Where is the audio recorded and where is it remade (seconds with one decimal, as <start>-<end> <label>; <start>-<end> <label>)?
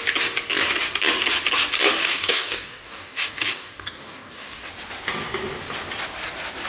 0.0-2.0 recorded; 2.0-4.7 remade; 4.7-6.7 recorded